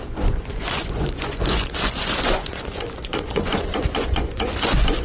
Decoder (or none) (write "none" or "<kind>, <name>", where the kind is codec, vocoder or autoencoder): vocoder, Vocos